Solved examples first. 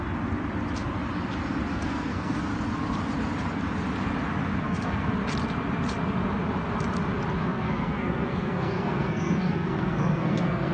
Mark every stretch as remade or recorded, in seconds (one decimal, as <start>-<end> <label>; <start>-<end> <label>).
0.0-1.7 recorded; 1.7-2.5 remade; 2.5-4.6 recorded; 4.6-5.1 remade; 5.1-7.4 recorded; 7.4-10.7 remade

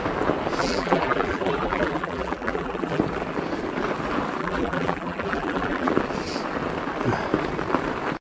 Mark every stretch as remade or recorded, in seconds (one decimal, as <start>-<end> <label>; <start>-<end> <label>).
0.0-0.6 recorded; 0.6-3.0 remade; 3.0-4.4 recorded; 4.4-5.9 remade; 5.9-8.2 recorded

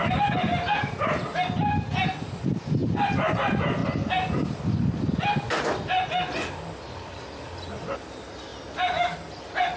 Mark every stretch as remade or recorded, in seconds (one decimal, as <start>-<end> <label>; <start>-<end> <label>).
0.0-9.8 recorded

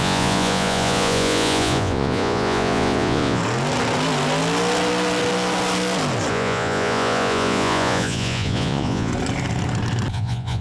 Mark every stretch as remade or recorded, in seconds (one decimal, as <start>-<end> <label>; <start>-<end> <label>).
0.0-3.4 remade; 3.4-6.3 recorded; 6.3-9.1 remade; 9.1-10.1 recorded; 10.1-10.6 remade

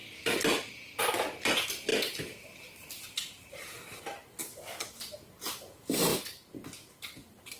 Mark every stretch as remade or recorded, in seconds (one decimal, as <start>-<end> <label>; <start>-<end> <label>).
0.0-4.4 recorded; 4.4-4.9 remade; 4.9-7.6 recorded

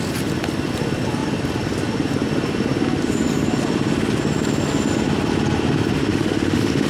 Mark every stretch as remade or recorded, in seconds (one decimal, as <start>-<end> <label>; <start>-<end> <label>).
0.0-6.1 recorded; 6.1-6.9 remade